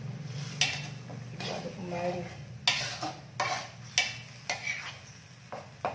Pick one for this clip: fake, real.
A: real